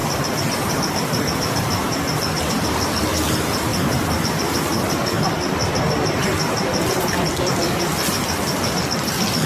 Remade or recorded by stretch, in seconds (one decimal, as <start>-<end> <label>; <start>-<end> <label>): 0.0-2.9 remade; 2.9-3.7 recorded; 3.7-8.2 remade; 8.2-9.5 recorded